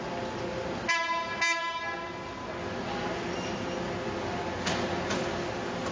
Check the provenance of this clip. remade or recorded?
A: recorded